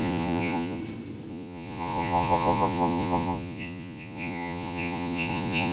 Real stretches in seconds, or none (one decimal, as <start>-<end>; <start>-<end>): 0.8-1.3

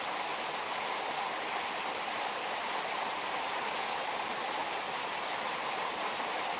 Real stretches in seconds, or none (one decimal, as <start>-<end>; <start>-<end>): 0.0-6.6

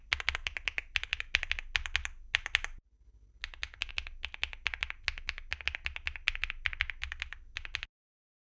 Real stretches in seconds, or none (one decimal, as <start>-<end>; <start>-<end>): 0.0-8.5

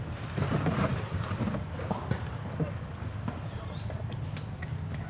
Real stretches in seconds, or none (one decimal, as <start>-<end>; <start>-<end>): 0.0-5.1

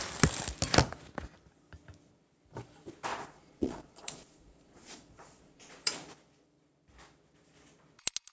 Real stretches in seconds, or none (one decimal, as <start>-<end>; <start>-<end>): 0.0-3.1; 5.9-8.3